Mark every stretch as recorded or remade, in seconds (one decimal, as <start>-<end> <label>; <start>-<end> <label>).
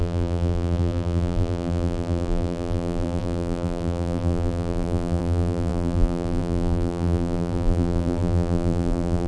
0.0-9.3 remade